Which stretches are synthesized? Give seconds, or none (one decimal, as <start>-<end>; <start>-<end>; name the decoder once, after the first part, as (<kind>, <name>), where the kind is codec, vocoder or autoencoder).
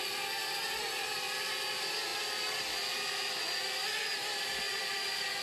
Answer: 0.0-2.1 (vocoder, BigVGAN v2); 3.7-5.4